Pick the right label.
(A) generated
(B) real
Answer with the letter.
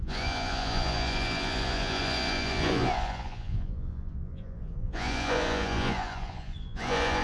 A